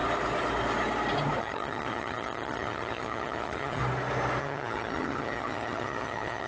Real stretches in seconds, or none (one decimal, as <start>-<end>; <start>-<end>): 0.0-1.4; 3.8-4.4